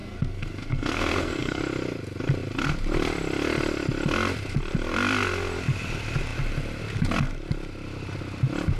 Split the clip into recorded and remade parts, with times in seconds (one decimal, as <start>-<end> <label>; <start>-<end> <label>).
0.0-1.6 remade; 1.6-8.8 recorded